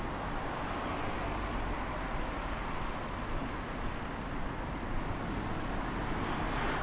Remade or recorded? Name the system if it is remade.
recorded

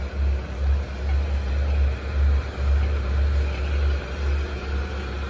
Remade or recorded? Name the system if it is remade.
recorded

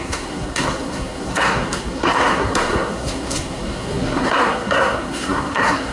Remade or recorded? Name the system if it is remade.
remade, codec, SNAC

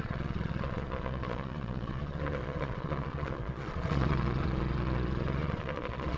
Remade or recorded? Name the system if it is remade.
remade, vocoder, Vocos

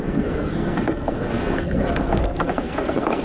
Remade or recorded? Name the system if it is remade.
remade, codec, SNAC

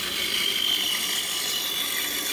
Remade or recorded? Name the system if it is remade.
remade, vocoder, BigVGAN v2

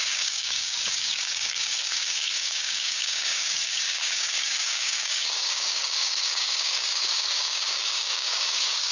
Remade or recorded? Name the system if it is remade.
remade, codec, DAC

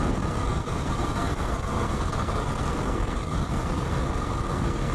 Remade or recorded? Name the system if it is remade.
remade, codec, SNAC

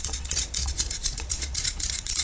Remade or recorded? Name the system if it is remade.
remade, vocoder, Vocos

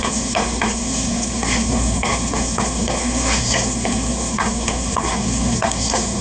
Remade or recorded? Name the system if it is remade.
remade, codec, SNAC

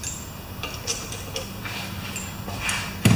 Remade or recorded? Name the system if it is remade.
recorded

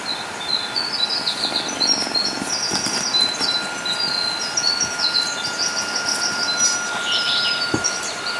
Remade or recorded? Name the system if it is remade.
recorded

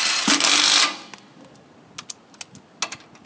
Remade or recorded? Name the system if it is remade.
recorded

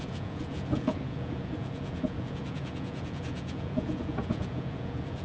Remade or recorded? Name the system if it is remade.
remade, vocoder, Vocos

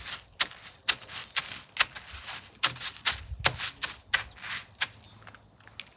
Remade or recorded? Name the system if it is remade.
recorded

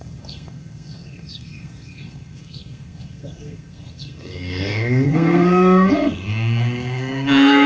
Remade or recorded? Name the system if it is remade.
remade, codec, SNAC